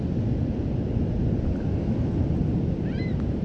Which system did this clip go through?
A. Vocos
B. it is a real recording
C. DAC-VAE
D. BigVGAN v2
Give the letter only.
B